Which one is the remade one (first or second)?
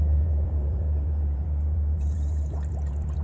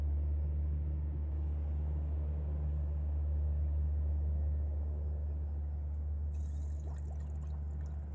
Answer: first